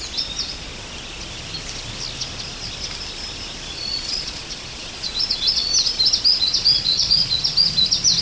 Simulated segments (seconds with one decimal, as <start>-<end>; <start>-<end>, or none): 0.0-0.7; 3.7-5.7; 6.4-7.2